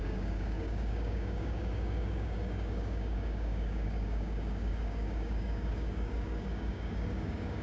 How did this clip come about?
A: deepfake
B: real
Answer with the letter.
A